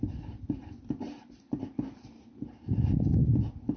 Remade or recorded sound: recorded